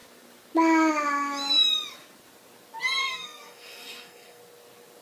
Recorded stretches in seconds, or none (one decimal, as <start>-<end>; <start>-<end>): 0.0-3.0; 4.4-5.0